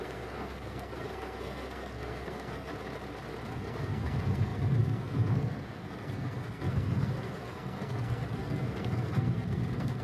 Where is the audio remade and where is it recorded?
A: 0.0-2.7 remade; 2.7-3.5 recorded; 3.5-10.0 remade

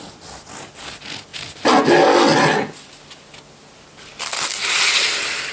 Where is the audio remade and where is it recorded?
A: 0.0-5.5 recorded